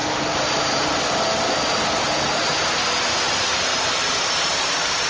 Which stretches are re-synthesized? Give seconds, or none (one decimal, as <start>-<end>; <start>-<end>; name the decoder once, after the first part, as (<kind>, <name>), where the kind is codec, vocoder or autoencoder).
none